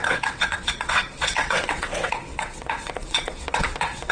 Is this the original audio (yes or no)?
no